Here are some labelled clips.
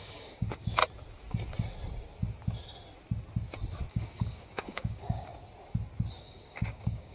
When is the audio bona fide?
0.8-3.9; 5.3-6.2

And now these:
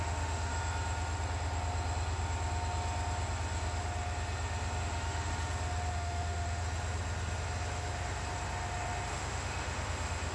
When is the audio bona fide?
0.5-4.8; 5.3-5.9; 6.6-9.1

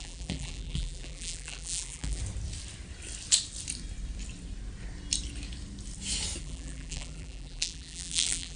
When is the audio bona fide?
2.2-6.4

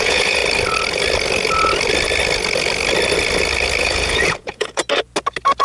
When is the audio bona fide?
0.4-3.8; 4.8-5.6

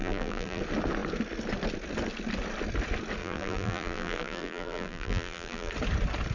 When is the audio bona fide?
0.6-3.2; 5.7-6.3

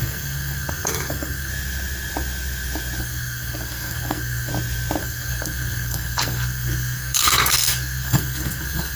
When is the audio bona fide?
1.5-3.0; 4.5-5.0